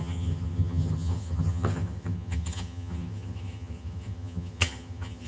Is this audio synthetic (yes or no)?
yes